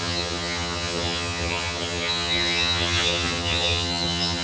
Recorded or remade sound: remade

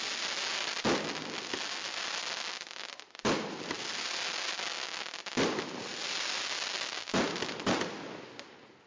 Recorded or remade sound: recorded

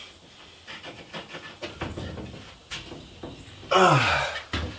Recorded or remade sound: recorded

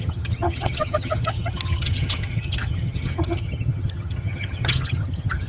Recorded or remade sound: remade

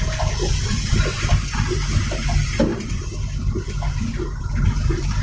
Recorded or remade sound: recorded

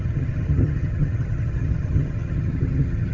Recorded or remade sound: remade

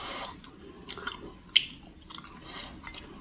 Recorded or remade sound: recorded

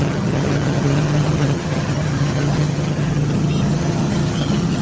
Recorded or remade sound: remade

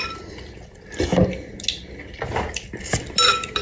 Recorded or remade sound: recorded